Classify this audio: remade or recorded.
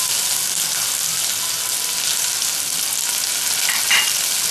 recorded